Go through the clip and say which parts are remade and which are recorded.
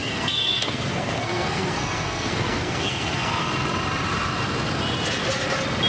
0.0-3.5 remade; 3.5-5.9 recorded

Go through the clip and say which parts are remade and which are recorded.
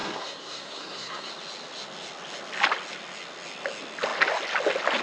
0.0-1.3 remade; 1.3-5.0 recorded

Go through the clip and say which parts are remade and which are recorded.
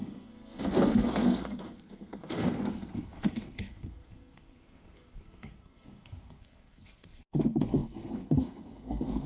0.0-9.3 remade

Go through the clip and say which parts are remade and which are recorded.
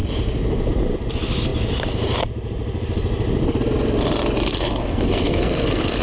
0.0-4.5 recorded; 4.5-6.0 remade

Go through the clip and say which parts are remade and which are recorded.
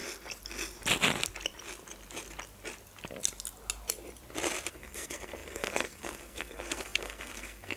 0.0-4.7 recorded; 4.7-7.8 remade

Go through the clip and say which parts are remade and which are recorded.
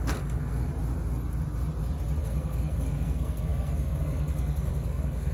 0.0-0.7 remade; 0.7-2.2 recorded; 2.2-5.3 remade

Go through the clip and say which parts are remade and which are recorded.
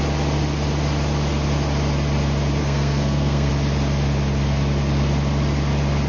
0.0-2.6 recorded; 2.6-3.5 remade; 3.5-6.1 recorded